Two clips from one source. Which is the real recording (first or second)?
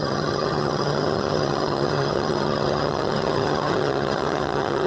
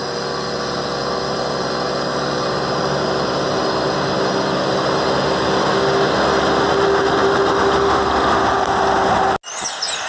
second